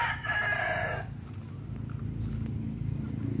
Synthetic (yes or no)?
no